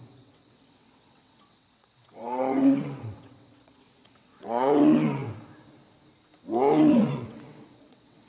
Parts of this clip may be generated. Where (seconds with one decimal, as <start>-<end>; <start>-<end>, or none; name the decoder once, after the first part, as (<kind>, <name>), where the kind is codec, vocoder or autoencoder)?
0.0-5.2 (vocoder, WaveNeXt); 6.8-8.3